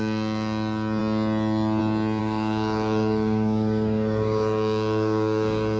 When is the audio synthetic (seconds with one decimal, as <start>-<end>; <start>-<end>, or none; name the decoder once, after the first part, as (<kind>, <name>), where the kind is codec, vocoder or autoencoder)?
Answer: 2.2-5.8 (codec, DAC)